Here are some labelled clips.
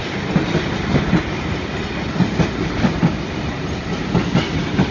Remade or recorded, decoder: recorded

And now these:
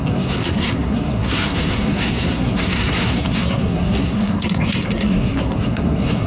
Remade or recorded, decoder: remade, codec, SNAC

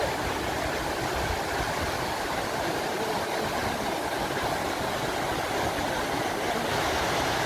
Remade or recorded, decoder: recorded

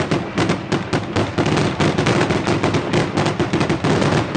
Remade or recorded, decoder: recorded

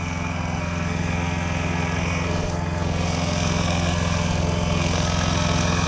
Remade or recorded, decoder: remade, codec, SNAC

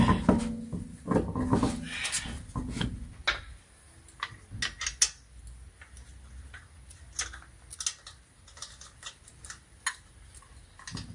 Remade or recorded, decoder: recorded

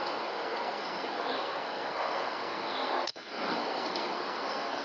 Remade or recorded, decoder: remade, codec, SNAC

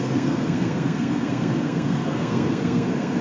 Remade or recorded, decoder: remade, codec, SNAC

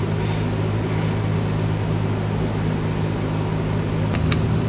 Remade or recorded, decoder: recorded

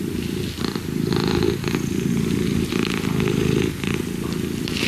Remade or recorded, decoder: recorded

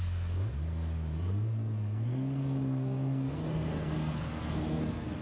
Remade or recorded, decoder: remade, codec, SNAC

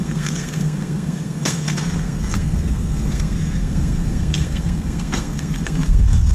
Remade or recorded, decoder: remade, codec, SNAC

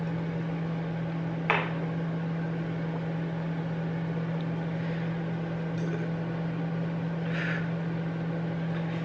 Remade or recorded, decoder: recorded